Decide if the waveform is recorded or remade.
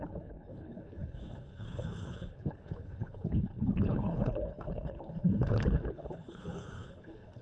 remade